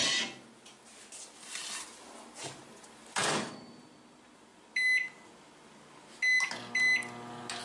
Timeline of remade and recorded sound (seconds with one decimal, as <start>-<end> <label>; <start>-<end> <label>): 0.0-7.6 recorded